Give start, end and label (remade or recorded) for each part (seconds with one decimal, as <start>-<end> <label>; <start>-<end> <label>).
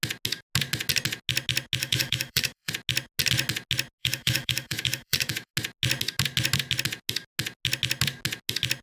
0.0-1.8 recorded; 1.8-2.7 remade; 2.7-4.0 recorded; 4.0-5.5 remade; 5.5-8.8 recorded